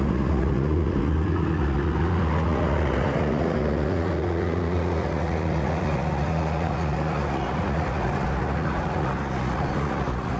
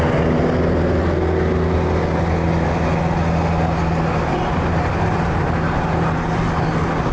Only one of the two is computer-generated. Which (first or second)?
first